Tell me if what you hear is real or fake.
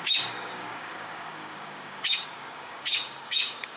fake